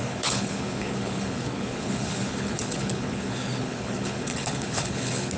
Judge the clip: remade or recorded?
remade